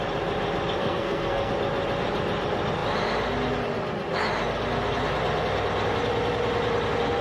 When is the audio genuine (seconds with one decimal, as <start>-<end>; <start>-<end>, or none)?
0.0-0.8; 1.5-7.2